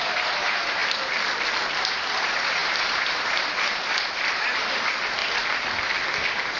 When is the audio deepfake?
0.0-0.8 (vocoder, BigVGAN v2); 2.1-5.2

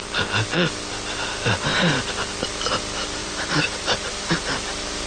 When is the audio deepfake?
3.2-4.1 (vocoder, BigVGAN v2)

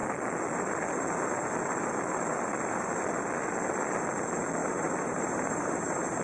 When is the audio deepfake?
4.6-6.2 (vocoder, BigVGAN v2)

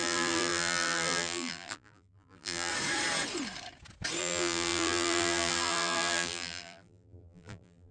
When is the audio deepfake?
0.0-2.7 (vocoder, BigVGAN v2); 4.2-7.9